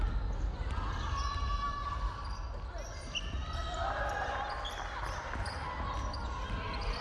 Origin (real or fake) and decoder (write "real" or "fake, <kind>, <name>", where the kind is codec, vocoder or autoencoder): real